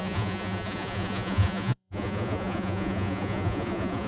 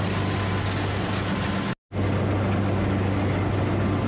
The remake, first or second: first